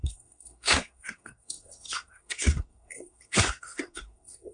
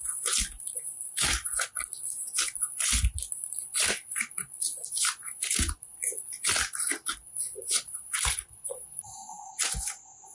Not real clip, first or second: first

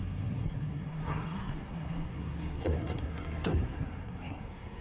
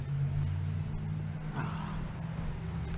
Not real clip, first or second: first